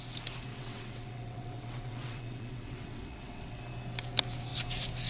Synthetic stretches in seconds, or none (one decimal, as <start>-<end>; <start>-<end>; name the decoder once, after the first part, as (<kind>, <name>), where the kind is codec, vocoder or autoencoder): 0.5-3.6 (vocoder, WaveNeXt)